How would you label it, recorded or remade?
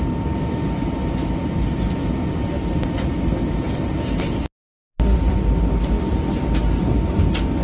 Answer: recorded